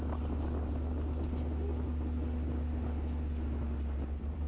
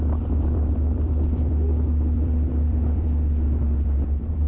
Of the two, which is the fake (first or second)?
second